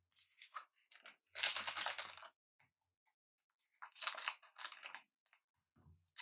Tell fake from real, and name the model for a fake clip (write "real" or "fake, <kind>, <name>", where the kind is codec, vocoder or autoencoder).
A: real